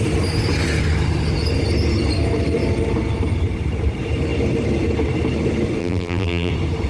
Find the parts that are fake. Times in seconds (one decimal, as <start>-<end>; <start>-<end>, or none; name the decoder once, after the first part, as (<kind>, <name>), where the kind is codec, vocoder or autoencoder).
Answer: 5.8-6.5 (vocoder, BigVGAN v2)